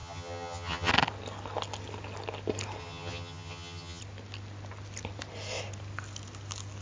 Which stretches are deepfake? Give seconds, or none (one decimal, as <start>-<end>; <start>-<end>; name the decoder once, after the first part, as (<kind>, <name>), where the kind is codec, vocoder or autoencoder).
0.0-0.9 (vocoder, HiFi-GAN); 2.8-4.0